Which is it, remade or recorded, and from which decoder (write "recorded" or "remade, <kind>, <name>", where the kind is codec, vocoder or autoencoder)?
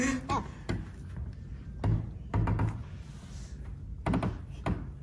recorded